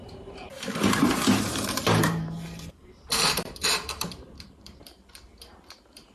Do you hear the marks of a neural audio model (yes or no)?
yes